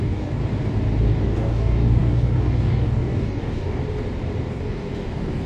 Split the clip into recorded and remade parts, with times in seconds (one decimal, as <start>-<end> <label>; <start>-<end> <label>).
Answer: 0.0-0.4 remade; 0.4-1.0 recorded; 1.0-3.8 remade; 3.8-4.5 recorded; 4.5-5.5 remade